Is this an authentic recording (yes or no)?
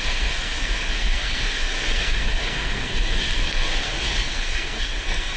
no